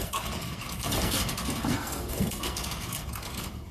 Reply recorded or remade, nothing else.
remade